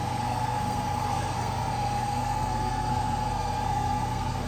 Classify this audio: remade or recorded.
remade